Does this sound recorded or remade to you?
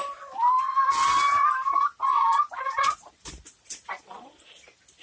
recorded